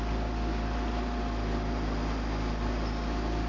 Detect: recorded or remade recorded